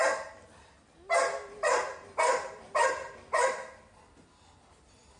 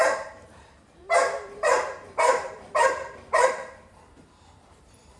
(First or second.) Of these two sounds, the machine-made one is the second